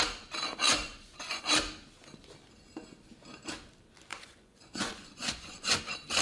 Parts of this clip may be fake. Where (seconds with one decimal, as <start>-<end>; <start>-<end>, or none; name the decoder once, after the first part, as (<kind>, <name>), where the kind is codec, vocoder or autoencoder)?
0.7-1.5 (vocoder, Vocos); 4.1-5.8